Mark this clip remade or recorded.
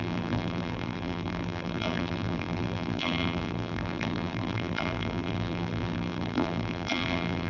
remade